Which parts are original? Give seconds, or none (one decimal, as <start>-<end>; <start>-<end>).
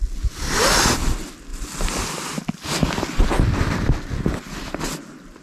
0.0-5.4